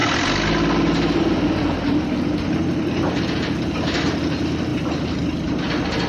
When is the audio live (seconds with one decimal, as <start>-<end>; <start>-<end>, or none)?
0.0-4.7; 5.5-6.1